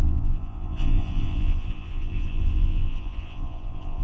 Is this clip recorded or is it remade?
remade